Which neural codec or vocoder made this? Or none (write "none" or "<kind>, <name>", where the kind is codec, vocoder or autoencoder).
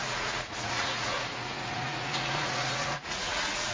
vocoder, Vocos